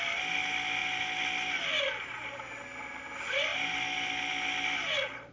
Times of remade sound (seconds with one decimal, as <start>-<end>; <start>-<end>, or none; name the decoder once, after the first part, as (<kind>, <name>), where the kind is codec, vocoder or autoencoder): none